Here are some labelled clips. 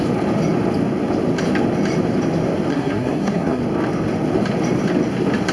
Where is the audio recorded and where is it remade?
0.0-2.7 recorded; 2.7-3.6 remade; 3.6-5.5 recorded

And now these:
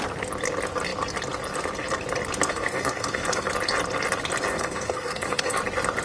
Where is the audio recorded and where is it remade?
0.0-2.5 recorded; 2.5-3.5 remade; 3.5-4.5 recorded; 4.5-5.6 remade; 5.6-6.0 recorded

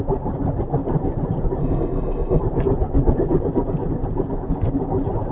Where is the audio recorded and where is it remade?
0.0-1.6 recorded; 1.6-2.4 remade; 2.4-5.3 recorded

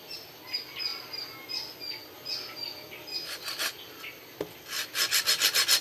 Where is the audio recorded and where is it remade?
0.0-5.8 recorded

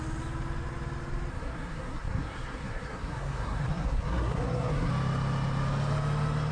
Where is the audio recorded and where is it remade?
0.0-1.3 recorded; 1.3-4.9 remade; 4.9-6.5 recorded